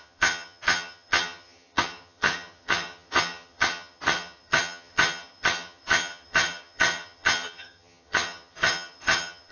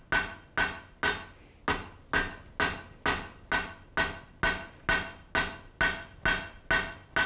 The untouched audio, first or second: second